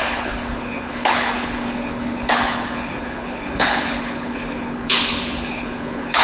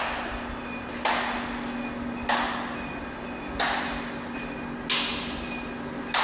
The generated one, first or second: first